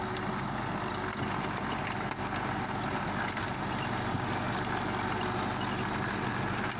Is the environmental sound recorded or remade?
recorded